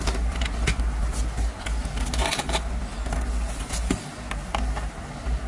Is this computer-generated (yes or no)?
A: no